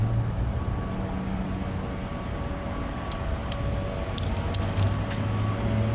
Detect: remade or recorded recorded